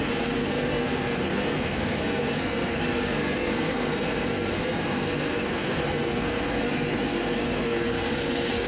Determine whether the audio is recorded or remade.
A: remade